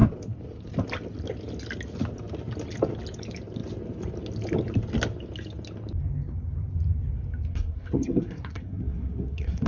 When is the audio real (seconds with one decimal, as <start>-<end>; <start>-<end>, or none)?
0.0-7.5